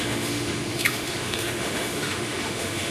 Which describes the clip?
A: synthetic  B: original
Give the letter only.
A